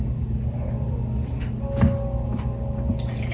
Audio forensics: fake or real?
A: real